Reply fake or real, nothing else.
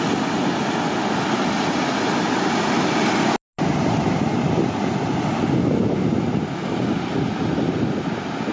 real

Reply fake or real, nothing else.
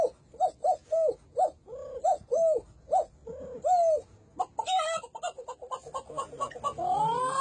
real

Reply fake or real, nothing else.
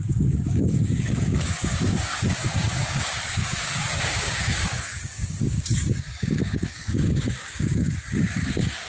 fake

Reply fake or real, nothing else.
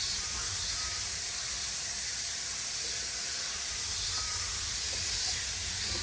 real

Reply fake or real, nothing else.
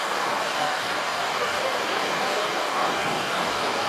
fake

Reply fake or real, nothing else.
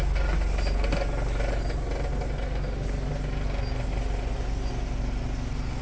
real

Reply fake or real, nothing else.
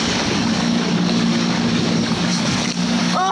fake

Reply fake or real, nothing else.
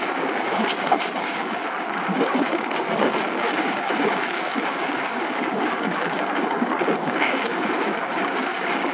fake